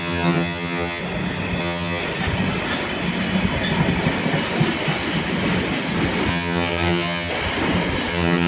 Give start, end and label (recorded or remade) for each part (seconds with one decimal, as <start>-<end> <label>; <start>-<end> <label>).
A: 0.0-1.0 remade; 1.0-1.6 recorded; 1.6-2.0 remade; 2.0-6.3 recorded; 6.3-7.3 remade; 7.3-8.1 recorded; 8.1-8.5 remade